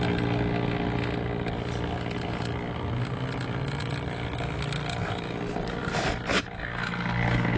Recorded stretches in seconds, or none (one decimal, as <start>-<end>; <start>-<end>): 0.0-7.6